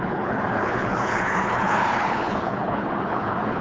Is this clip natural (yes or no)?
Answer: no